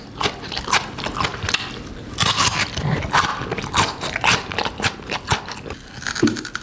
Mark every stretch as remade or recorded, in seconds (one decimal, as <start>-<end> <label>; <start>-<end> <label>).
0.0-6.6 recorded